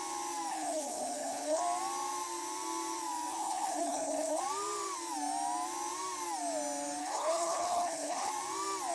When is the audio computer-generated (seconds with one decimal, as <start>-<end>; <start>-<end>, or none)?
0.5-1.6; 3.3-4.4; 7.0-8.3